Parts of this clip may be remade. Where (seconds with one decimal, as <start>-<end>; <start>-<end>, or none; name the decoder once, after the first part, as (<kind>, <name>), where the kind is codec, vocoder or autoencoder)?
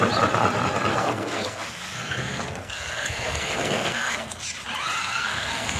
0.9-4.4 (codec, SNAC); 5.0-5.8